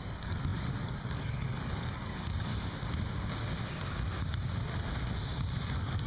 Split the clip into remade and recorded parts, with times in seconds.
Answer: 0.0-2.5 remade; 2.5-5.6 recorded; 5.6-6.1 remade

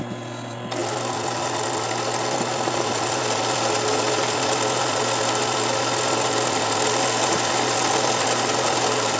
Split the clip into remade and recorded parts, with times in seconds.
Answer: 0.0-9.2 recorded

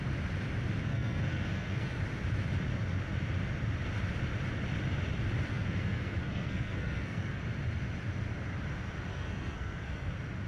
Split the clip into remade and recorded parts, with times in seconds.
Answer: 0.0-0.9 recorded; 0.9-2.0 remade; 2.0-5.5 recorded; 5.5-7.4 remade; 7.4-9.1 recorded; 9.1-10.1 remade; 10.1-10.5 recorded

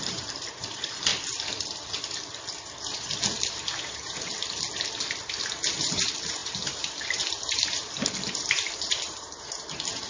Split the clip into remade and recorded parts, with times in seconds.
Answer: 0.0-1.1 remade; 1.1-2.8 recorded; 2.8-4.3 remade; 4.3-5.9 recorded; 5.9-10.1 remade

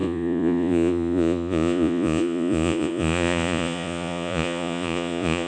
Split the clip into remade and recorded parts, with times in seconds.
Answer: 0.0-5.5 remade